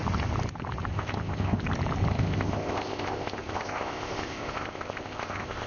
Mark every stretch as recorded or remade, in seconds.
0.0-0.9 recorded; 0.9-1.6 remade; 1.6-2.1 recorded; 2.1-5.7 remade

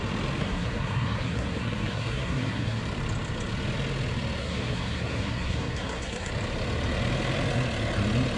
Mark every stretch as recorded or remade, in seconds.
0.0-0.4 recorded; 0.4-2.8 remade; 2.8-4.4 recorded; 4.4-6.3 remade; 6.3-8.4 recorded

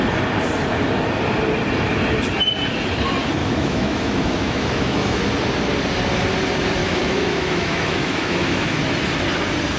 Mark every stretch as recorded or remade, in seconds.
0.0-3.4 recorded; 3.4-5.2 remade; 5.2-6.8 recorded; 6.8-8.8 remade; 8.8-9.8 recorded